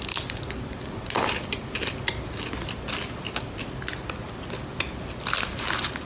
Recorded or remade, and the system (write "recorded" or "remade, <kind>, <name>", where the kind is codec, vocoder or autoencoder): recorded